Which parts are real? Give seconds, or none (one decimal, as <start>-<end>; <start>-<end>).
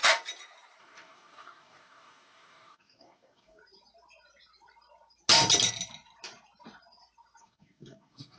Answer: 0.0-0.8; 3.6-7.4